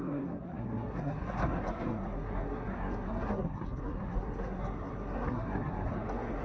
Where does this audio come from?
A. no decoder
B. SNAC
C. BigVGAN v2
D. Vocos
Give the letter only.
B